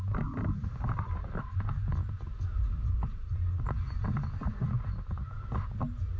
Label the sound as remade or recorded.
recorded